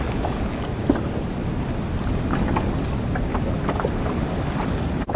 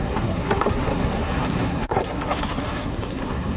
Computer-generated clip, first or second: second